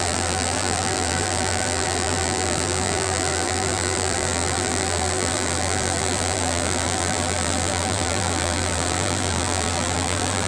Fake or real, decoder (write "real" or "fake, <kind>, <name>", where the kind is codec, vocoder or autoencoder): fake, vocoder, BigVGAN v2